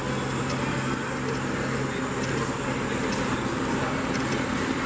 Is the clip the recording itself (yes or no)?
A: yes